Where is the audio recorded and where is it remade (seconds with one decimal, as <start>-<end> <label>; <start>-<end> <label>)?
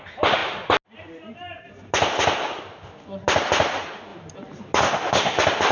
0.0-5.7 recorded